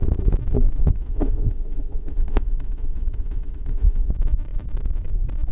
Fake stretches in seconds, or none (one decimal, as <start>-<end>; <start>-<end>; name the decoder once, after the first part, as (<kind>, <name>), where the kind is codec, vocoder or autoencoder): 0.8-4.1 (autoencoder, DAC-VAE)

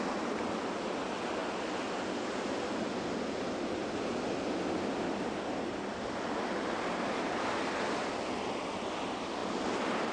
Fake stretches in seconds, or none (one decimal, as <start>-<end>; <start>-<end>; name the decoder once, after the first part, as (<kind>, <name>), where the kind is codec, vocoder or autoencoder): none

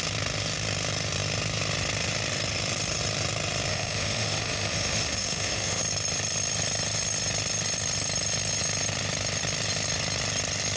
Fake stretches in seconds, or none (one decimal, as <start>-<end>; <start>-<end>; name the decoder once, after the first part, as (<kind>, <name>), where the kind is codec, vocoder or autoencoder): 3.7-5.8 (autoencoder, DAC-VAE)